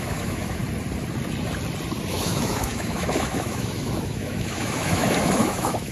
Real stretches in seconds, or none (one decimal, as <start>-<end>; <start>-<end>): 0.6-2.1